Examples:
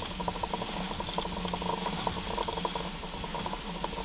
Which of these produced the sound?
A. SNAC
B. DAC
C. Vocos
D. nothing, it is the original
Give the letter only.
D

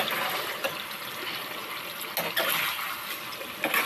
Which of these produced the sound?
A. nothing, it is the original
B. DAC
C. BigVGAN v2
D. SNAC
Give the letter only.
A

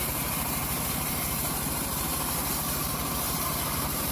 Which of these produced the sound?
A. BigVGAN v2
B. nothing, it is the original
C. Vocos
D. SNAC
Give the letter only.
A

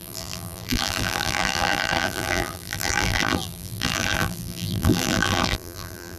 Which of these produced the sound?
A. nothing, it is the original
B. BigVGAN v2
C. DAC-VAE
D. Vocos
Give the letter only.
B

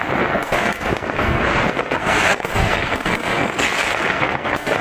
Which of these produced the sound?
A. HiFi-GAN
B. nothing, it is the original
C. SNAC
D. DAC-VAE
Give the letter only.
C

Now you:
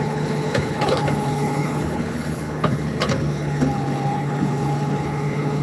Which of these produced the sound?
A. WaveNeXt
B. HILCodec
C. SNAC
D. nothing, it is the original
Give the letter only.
B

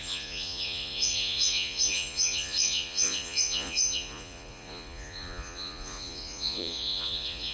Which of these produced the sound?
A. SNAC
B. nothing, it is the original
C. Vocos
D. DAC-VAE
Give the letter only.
C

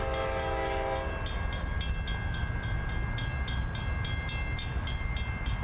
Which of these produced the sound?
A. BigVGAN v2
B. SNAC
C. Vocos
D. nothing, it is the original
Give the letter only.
D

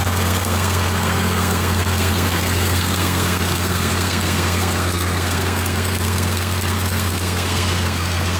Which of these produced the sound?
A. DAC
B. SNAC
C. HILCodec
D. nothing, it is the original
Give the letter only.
B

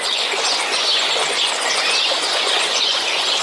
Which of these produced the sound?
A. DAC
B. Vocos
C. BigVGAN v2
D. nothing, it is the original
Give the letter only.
B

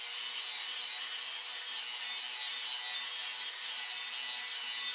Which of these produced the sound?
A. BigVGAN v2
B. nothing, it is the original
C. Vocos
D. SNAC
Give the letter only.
B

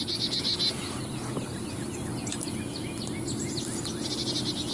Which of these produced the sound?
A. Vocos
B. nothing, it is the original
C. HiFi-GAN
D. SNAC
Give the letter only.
B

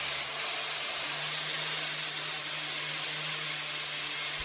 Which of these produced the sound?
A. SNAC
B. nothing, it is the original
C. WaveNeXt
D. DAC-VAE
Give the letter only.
B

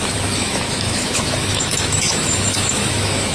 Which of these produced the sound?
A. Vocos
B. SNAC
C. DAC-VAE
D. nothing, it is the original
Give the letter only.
C